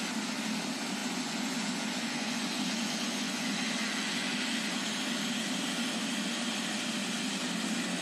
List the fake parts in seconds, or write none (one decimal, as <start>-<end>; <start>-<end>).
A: 1.0-4.8